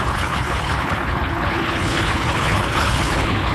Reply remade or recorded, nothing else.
remade